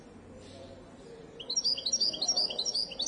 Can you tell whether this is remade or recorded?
recorded